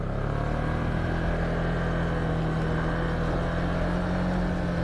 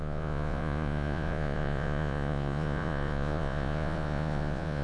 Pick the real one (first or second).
first